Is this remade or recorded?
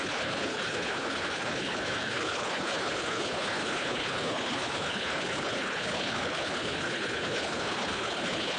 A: remade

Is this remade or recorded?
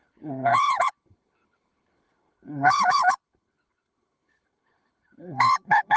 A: remade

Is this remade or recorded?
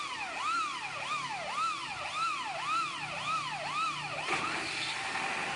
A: recorded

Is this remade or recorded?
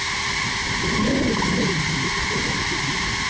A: recorded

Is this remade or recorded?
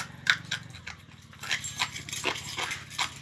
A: recorded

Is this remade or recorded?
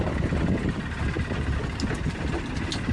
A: recorded